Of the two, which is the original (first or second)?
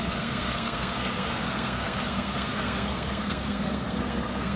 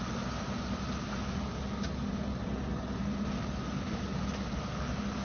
second